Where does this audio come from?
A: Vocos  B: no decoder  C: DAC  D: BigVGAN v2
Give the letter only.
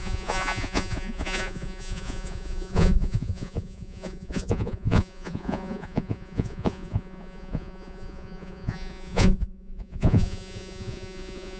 A